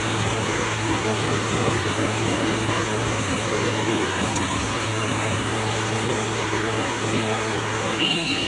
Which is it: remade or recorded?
remade